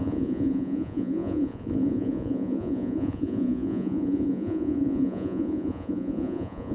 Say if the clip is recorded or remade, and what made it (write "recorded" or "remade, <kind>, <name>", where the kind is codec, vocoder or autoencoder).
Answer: remade, vocoder, Vocos